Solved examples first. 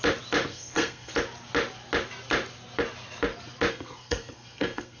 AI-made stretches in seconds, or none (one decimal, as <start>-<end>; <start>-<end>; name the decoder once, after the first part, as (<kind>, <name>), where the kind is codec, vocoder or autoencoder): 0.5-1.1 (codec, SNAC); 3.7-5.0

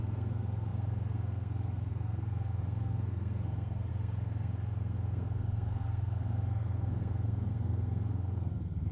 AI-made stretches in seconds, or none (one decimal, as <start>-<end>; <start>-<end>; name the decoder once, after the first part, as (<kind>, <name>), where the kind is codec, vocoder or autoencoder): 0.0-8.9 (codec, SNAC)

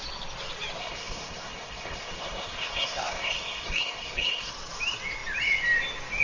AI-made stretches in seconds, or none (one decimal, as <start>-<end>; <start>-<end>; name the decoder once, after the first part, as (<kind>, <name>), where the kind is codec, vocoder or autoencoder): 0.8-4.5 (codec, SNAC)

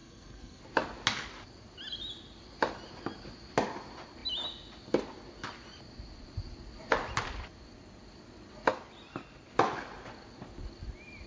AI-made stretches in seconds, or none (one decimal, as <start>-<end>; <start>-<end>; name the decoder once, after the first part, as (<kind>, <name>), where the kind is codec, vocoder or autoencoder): 0.0-0.6 (codec, SNAC)

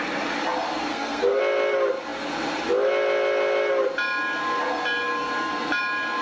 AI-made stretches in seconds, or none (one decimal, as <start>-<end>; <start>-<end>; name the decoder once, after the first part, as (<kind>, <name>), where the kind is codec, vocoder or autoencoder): 0.9-1.4 (codec, SNAC)

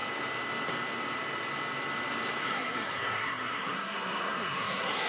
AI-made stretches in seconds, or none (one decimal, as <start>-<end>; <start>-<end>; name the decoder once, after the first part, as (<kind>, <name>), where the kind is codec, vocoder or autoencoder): 2.4-5.1 (codec, SNAC)